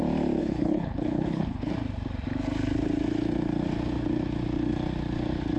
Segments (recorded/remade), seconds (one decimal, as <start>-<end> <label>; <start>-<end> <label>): 0.0-0.4 recorded; 0.4-1.7 remade; 1.7-5.6 recorded